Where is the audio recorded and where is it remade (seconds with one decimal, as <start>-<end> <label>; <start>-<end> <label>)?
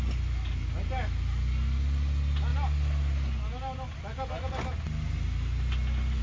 0.0-6.2 recorded